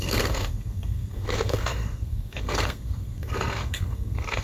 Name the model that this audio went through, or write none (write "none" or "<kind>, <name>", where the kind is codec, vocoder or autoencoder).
codec, SNAC